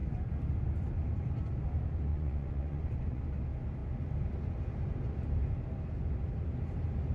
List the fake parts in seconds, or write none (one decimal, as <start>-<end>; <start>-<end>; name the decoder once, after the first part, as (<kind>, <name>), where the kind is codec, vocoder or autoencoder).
2.1-3.2 (vocoder, Vocos)